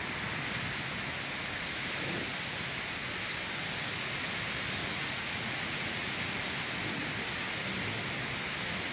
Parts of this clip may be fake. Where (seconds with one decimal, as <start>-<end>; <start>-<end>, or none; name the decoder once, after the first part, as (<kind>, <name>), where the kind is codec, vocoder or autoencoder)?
4.8-6.1 (vocoder, Vocos)